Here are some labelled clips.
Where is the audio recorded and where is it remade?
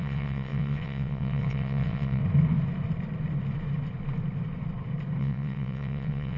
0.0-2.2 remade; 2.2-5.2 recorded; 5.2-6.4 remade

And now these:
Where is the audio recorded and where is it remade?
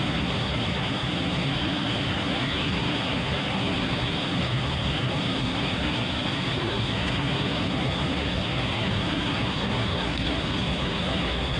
0.0-11.6 remade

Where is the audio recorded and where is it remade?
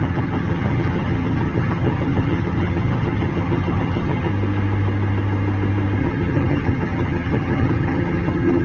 0.0-4.3 remade; 4.3-6.0 recorded; 6.0-8.6 remade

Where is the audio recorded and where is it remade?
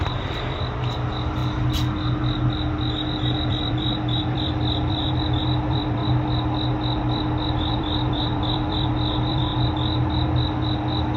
0.0-1.4 remade; 1.4-3.5 recorded; 3.5-6.0 remade; 6.0-7.7 recorded; 7.7-9.5 remade; 9.5-11.2 recorded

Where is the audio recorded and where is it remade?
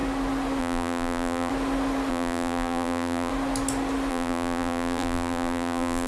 0.0-0.6 recorded; 0.6-1.5 remade; 1.5-2.1 recorded; 2.1-3.3 remade; 3.3-4.1 recorded; 4.1-6.1 remade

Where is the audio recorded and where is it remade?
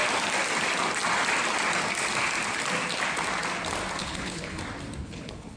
0.0-4.0 recorded; 4.0-4.6 remade; 4.6-5.0 recorded; 5.0-5.6 remade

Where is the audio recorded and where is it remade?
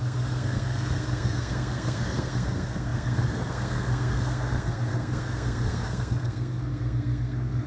0.0-7.7 remade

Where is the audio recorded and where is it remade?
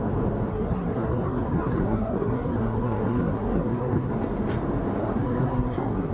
0.0-0.5 recorded; 0.5-4.1 remade; 4.1-5.0 recorded; 5.0-6.1 remade